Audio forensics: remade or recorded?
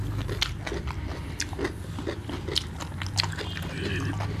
recorded